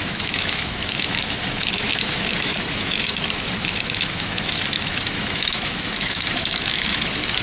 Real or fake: fake